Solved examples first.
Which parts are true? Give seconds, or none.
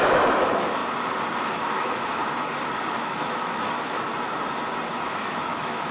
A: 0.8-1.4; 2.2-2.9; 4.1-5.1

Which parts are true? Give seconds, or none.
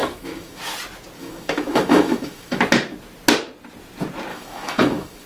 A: 0.6-1.2; 2.6-4.3